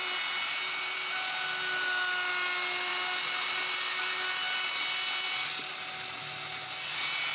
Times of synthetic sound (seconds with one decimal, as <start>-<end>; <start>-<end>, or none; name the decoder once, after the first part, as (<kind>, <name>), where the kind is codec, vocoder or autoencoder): none